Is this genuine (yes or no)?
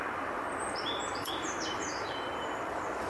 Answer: no